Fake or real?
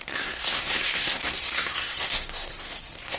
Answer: fake